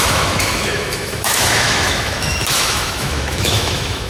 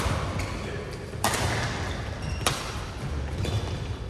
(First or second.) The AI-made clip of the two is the first